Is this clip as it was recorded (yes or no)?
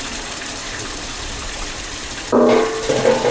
yes